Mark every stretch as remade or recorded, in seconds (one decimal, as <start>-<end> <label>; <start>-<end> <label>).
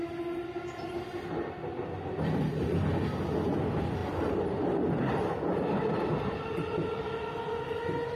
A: 0.0-1.6 recorded; 1.6-2.9 remade; 2.9-4.0 recorded; 4.0-5.0 remade; 5.0-8.2 recorded